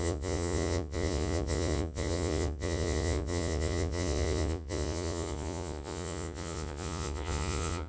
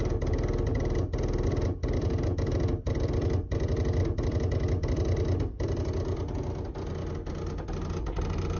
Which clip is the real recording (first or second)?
second